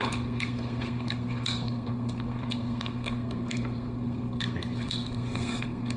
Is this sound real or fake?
fake